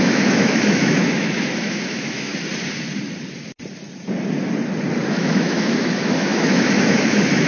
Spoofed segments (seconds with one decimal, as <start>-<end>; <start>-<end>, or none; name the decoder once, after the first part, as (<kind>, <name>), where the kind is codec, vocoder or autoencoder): 0.0-2.3 (autoencoder, DAC-VAE); 5.1-7.5